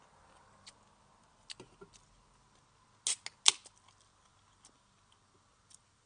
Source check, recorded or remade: recorded